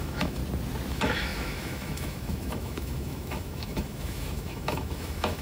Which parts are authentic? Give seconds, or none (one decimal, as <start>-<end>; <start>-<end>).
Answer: 0.4-0.9